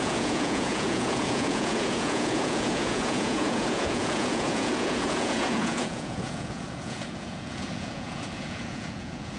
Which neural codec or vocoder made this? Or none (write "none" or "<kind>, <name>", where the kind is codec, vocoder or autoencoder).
vocoder, Vocos